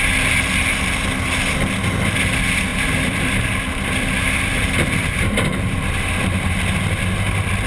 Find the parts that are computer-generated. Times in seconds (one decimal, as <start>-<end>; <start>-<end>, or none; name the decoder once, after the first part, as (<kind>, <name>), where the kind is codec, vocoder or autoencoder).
2.7-6.6 (vocoder, BigVGAN v2)